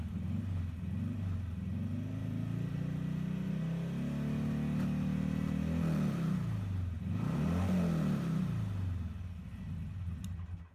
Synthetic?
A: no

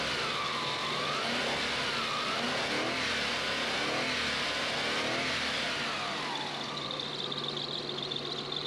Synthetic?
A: no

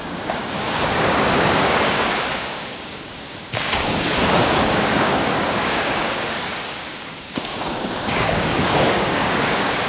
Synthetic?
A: yes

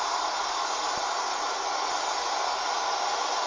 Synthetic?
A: no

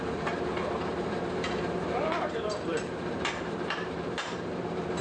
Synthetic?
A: yes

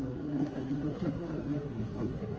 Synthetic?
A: yes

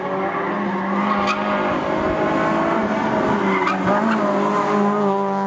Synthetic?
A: no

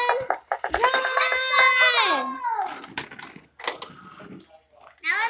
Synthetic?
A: no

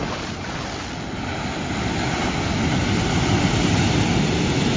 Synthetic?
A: no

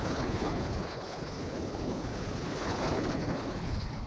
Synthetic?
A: yes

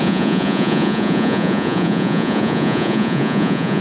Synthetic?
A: yes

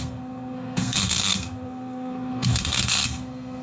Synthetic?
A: yes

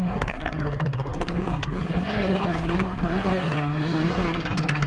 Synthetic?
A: yes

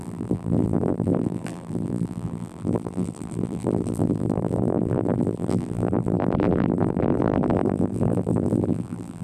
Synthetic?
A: yes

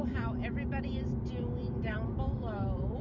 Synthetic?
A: yes